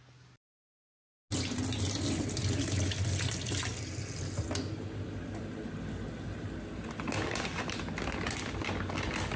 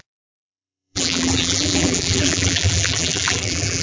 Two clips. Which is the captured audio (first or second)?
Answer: first